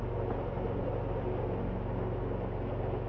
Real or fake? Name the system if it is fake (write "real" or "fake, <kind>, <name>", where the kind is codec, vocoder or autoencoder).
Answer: real